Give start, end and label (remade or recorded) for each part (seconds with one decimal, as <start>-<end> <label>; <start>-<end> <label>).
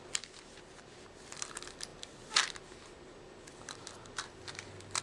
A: 0.0-5.0 recorded